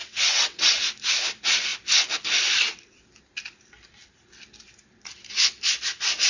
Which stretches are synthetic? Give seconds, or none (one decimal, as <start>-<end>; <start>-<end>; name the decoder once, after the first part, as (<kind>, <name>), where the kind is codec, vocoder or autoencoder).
0.0-0.8 (vocoder, WaveNeXt)